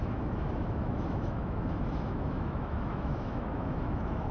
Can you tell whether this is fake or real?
fake